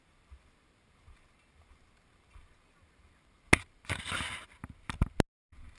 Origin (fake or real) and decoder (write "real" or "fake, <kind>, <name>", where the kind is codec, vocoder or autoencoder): real